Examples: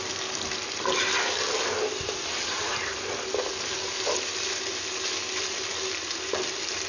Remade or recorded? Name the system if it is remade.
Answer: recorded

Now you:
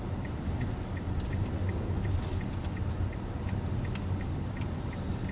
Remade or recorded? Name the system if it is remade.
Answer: recorded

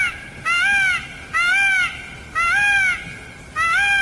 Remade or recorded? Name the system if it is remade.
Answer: recorded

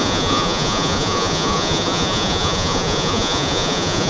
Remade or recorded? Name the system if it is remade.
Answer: remade, vocoder, Vocos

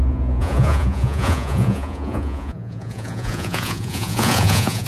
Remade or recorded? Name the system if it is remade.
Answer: remade, vocoder, Vocos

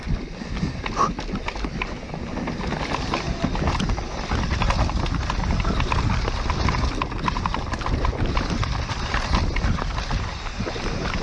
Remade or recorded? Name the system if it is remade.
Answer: recorded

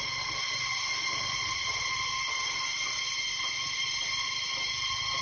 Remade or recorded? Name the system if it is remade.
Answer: recorded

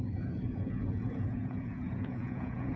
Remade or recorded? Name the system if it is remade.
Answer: remade, vocoder, Vocos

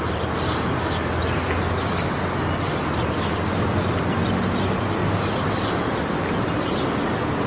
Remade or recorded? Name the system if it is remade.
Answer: recorded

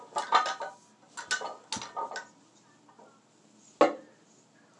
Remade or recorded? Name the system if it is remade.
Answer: recorded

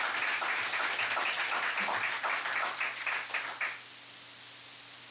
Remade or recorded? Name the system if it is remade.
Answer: recorded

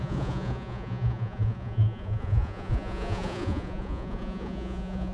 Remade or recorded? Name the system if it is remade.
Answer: remade, vocoder, Vocos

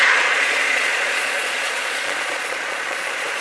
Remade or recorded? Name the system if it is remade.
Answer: remade, vocoder, Vocos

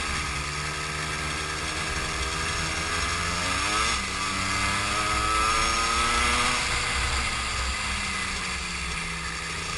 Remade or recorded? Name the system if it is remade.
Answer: recorded